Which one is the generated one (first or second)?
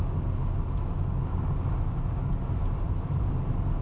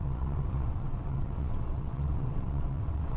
second